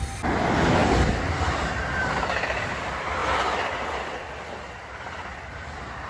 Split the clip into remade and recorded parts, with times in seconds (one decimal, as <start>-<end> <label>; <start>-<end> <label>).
0.0-6.1 recorded